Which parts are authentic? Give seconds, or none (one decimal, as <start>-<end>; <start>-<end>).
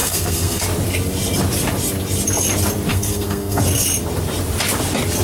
0.6-2.9; 3.6-5.2